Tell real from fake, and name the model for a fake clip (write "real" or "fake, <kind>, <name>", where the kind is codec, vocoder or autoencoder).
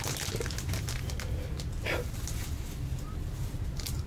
real